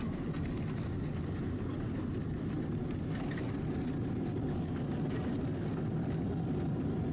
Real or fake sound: real